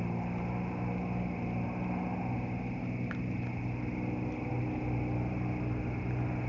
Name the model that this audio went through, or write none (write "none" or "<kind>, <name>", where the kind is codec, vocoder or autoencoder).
none